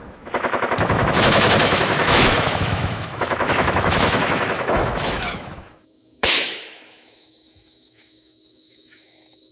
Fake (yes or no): yes